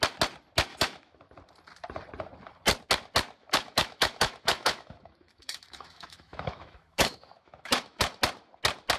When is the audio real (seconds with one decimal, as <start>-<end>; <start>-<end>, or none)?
0.0-0.7; 1.3-3.4; 8.2-9.0